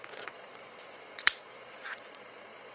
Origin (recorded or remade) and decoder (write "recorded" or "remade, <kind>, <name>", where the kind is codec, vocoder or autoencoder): remade, vocoder, Vocos